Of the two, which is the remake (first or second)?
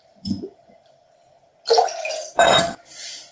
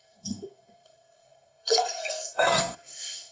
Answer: second